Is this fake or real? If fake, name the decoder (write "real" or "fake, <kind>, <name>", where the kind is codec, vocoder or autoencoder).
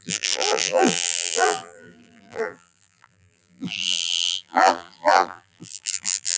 fake, vocoder, BigVGAN v2